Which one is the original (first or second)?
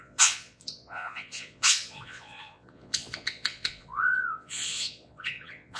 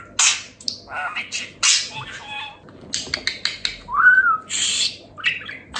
second